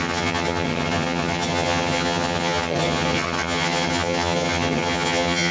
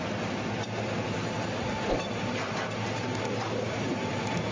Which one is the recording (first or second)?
second